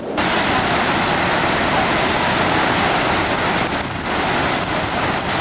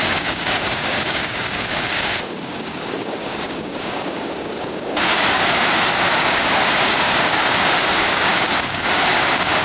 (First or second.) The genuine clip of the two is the first